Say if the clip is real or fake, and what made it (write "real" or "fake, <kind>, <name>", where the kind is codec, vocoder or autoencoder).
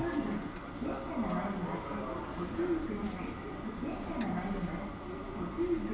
real